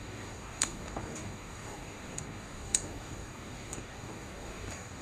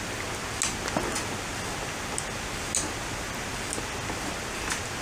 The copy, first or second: first